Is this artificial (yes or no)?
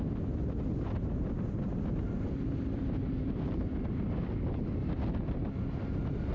no